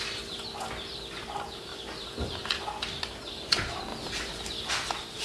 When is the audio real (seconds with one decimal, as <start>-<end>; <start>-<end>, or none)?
0.0-5.2